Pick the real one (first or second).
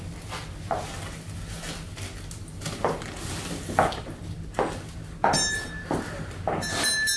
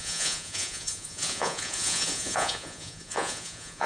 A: first